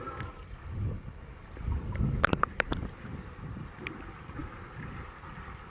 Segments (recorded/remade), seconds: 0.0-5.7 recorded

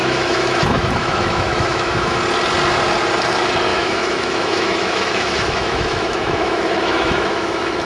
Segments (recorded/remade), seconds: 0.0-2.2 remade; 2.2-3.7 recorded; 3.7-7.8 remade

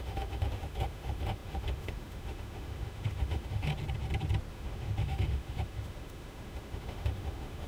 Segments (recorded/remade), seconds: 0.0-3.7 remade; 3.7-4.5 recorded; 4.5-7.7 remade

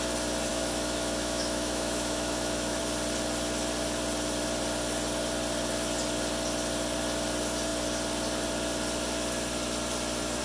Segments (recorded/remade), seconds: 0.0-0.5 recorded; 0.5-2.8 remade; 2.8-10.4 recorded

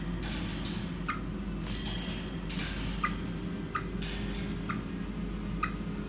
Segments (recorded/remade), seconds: 0.0-6.1 recorded